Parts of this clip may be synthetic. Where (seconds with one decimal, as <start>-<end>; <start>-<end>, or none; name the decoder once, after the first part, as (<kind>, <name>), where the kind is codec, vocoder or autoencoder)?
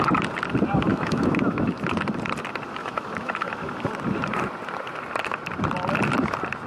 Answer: 0.9-2.0 (autoencoder, DAC-VAE); 2.8-3.9